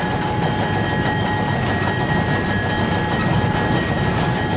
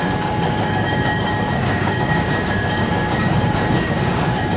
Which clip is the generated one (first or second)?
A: second